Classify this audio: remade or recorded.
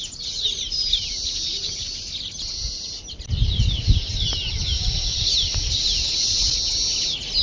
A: recorded